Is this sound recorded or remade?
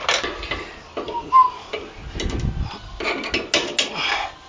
recorded